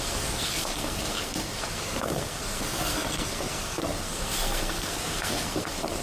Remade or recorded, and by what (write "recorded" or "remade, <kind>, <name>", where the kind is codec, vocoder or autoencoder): remade, codec, SNAC